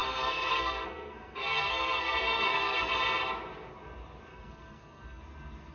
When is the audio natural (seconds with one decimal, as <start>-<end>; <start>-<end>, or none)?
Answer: 2.9-4.3; 5.2-5.7